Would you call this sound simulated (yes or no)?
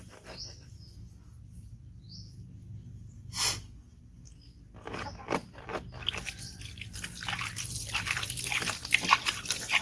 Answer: no